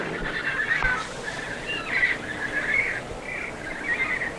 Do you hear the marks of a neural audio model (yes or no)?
no